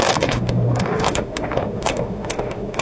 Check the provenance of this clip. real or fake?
fake